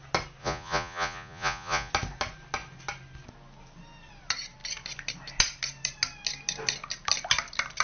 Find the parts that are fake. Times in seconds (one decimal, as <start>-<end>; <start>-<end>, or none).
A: 0.4-1.9